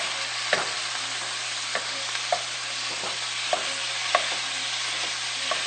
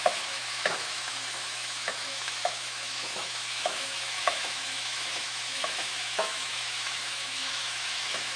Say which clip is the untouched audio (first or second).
first